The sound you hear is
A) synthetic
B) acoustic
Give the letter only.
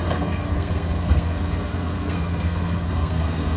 A